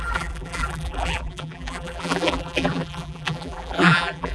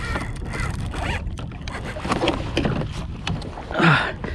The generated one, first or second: first